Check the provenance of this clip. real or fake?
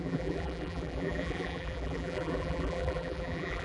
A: fake